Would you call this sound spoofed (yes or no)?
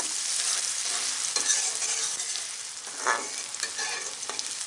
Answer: no